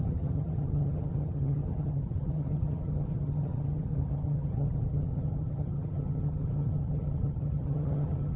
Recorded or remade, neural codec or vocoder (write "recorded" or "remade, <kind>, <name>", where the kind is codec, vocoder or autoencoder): remade, vocoder, HiFi-GAN